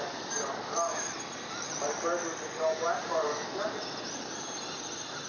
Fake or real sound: real